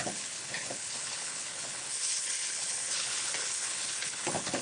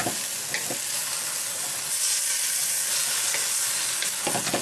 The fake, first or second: first